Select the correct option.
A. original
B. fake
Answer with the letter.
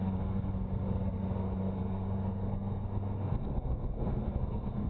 B